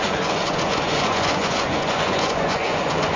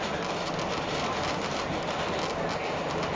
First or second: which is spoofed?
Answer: first